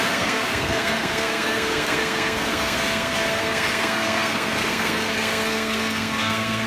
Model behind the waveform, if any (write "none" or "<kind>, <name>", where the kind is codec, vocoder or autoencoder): codec, SNAC